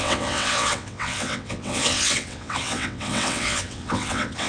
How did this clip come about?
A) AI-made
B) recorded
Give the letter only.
A